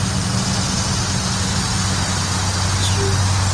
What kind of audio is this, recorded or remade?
recorded